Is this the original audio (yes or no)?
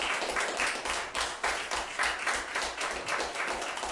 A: yes